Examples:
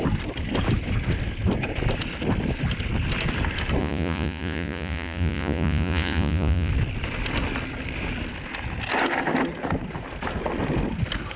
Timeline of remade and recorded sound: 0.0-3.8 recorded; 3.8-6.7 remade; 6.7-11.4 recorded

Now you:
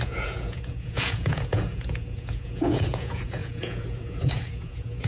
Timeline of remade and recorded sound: 0.0-5.1 remade

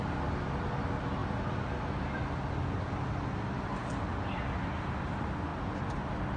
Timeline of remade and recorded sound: 0.0-6.4 recorded

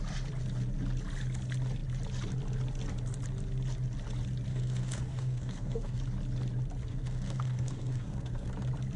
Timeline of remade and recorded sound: 0.0-4.5 recorded; 4.5-6.0 remade; 6.0-6.9 recorded; 6.9-8.5 remade; 8.5-9.0 recorded

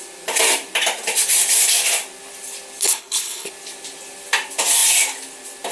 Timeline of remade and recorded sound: 0.0-2.8 recorded; 2.8-3.5 remade; 3.5-5.7 recorded